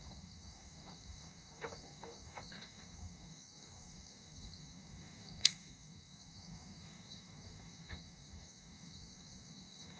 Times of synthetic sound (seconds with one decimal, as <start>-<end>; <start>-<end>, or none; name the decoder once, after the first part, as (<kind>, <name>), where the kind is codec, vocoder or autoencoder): 0.0-10.0 (codec, DAC)

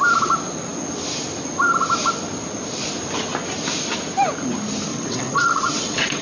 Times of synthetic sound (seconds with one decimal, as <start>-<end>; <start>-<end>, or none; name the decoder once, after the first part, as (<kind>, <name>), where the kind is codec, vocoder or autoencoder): 4.9-6.2 (vocoder, WaveNeXt)

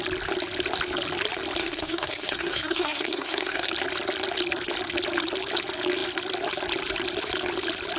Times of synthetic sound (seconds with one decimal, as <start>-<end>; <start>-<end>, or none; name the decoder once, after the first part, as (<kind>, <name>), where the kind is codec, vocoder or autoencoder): 1.6-3.7 (codec, SNAC)

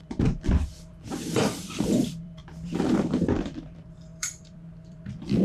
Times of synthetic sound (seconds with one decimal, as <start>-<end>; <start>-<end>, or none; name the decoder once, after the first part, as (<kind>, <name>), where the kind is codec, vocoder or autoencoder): 0.0-5.4 (vocoder, BigVGAN v2)

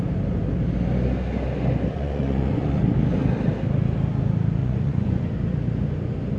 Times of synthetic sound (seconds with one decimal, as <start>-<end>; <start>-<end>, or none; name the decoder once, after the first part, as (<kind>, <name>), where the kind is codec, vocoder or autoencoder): 1.9-2.8 (vocoder, Vocos); 4.6-5.2